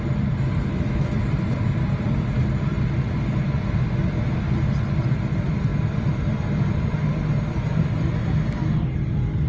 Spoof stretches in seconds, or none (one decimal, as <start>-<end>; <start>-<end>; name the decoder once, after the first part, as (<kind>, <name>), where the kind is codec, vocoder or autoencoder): 0.7-1.2 (autoencoder, DAC-VAE)